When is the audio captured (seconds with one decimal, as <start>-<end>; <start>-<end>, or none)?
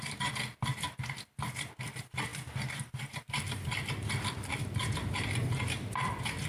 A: 0.7-1.9